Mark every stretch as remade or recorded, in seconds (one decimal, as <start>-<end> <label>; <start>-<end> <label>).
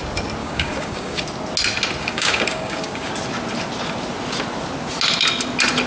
0.0-0.4 recorded; 0.4-1.2 remade; 1.2-2.0 recorded; 2.0-3.1 remade; 3.1-5.9 recorded